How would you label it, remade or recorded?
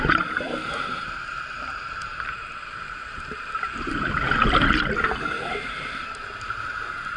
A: remade